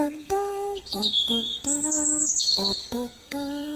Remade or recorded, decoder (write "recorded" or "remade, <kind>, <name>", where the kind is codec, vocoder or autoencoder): remade, codec, SNAC